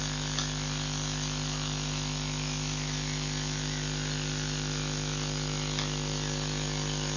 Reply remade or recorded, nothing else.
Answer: recorded